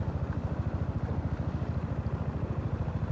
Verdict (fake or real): real